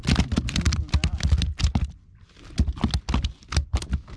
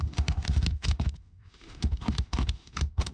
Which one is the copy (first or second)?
second